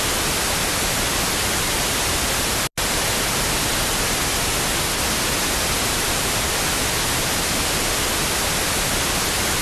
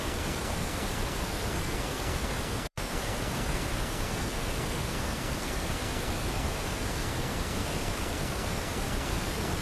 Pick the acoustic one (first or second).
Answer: first